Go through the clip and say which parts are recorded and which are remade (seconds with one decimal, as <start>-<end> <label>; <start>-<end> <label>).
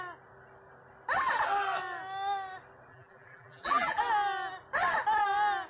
0.0-2.9 recorded; 2.9-4.0 remade; 4.0-5.7 recorded